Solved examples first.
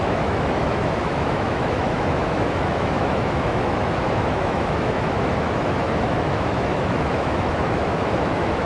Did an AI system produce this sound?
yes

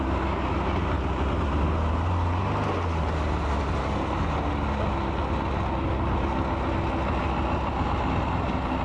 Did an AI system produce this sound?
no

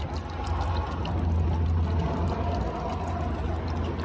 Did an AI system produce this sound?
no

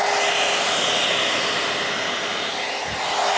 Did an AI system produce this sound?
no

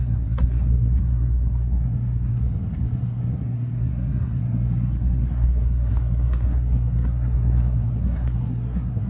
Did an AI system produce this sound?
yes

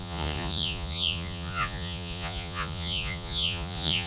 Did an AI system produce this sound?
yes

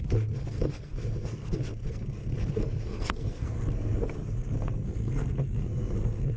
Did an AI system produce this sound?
yes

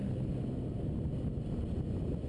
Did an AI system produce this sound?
no